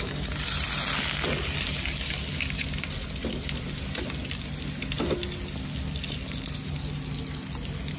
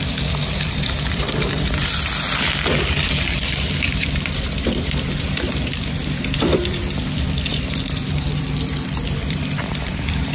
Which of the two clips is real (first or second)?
first